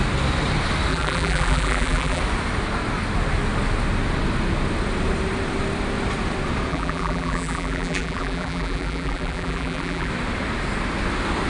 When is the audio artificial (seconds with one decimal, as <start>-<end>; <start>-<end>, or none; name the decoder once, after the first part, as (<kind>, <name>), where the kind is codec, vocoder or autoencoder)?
0.9-2.2 (vocoder, BigVGAN v2); 6.7-10.1